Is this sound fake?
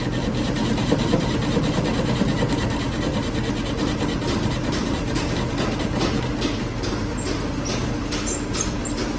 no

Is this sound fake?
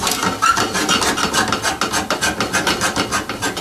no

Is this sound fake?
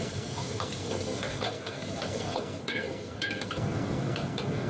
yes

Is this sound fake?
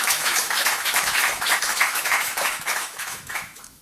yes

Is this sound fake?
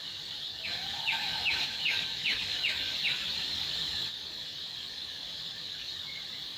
yes